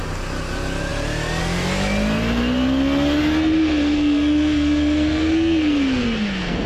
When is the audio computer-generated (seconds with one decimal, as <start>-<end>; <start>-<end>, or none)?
3.5-6.7